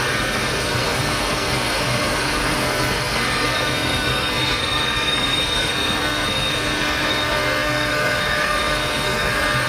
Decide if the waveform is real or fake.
fake